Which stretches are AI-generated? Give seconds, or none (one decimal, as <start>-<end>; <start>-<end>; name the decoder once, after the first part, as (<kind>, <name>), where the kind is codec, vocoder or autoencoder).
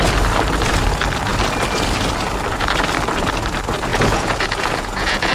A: 3.9-5.3 (vocoder, Vocos)